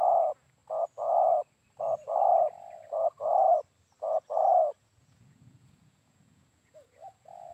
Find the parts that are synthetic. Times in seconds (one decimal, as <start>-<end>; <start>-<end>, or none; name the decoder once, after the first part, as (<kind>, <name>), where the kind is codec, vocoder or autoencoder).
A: 0.0-0.6 (vocoder, Vocos); 4.8-7.5